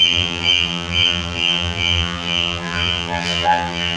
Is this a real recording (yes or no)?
no